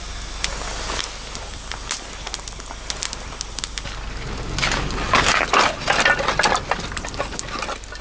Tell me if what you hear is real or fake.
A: real